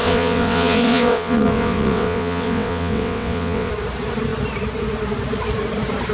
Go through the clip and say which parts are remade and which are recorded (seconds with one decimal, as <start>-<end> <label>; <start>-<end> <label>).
0.0-3.7 remade; 3.7-6.1 recorded